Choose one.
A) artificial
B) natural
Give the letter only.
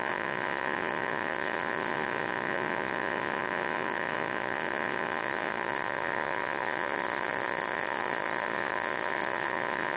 A